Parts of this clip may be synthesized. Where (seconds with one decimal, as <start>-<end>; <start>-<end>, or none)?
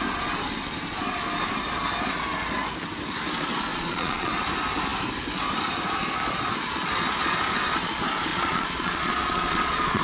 3.7-4.3; 8.3-10.0